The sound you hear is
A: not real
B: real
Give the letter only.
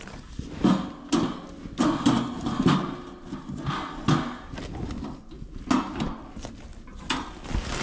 B